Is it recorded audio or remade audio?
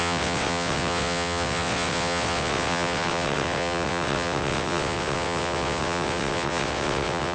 remade